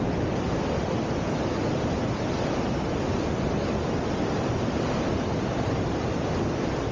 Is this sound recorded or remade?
recorded